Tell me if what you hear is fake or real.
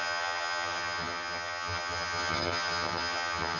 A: fake